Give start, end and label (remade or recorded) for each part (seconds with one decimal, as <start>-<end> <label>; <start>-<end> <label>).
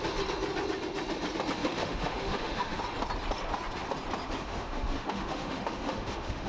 0.0-1.6 recorded; 1.6-2.8 remade; 2.8-4.4 recorded; 4.4-6.5 remade